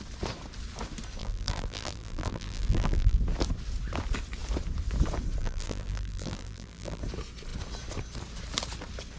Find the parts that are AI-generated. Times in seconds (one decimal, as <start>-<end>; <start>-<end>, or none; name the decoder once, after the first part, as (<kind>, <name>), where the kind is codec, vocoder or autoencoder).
1.2-3.2 (vocoder, BigVGAN v2); 5.4-7.0